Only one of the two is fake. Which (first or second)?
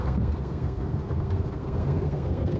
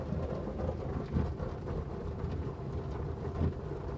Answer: first